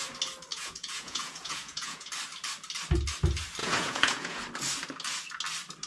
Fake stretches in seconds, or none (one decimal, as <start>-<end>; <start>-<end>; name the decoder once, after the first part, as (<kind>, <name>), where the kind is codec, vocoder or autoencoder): 0.5-2.1 (vocoder, Vocos); 3.6-4.4

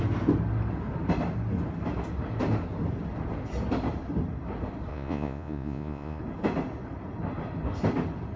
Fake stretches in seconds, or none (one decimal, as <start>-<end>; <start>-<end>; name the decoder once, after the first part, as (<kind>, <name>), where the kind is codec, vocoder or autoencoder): 4.9-6.2 (vocoder, Vocos)